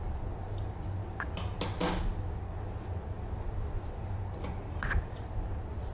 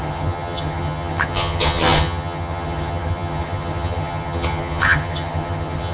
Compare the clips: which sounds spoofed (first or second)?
second